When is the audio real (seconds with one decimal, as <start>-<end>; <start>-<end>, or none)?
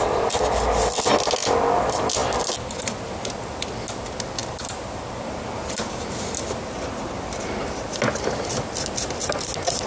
0.0-9.9